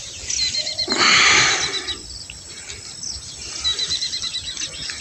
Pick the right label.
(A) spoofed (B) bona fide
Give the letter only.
B